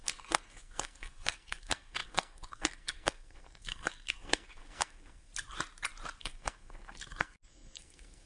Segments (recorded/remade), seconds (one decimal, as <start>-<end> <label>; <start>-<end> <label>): 0.0-5.3 remade; 5.3-6.2 recorded; 6.2-8.3 remade